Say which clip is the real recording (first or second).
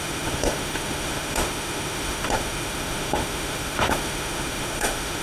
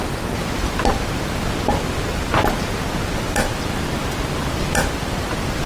second